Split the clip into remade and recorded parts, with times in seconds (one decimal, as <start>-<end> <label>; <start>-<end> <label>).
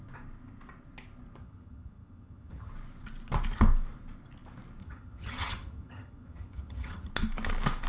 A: 0.0-1.4 recorded; 1.4-2.7 remade; 2.7-4.8 recorded; 4.8-7.1 remade; 7.1-7.9 recorded